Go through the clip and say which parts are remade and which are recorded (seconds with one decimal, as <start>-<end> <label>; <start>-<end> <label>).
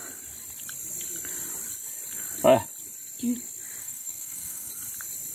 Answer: 0.0-3.8 recorded; 3.8-4.7 remade; 4.7-5.3 recorded